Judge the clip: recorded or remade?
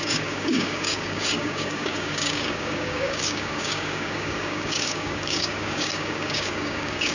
remade